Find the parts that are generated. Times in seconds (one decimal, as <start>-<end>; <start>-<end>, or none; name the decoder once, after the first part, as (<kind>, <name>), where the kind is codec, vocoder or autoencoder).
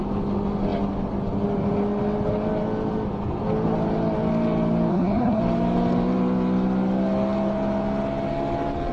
4.9-5.4 (codec, SNAC)